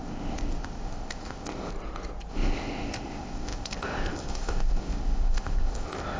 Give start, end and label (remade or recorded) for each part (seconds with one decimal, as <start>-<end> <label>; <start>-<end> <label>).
0.0-1.7 remade; 1.7-2.3 recorded; 2.3-6.2 remade